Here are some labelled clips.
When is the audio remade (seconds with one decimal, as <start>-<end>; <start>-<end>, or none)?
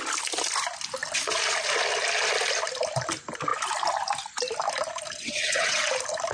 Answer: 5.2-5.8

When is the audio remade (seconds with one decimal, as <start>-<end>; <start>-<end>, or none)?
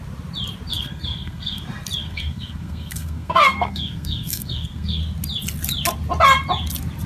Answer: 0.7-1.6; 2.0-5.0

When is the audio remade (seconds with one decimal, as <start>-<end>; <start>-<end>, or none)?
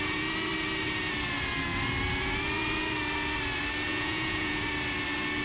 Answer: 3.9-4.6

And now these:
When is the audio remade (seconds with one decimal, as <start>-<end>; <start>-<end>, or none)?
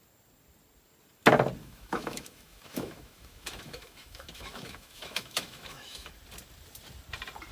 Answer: 1.6-6.1